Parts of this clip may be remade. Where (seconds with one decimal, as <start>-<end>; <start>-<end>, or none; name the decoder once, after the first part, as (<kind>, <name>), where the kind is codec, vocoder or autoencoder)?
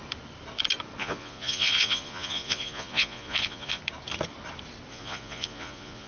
1.0-3.8 (vocoder, Vocos); 4.9-6.1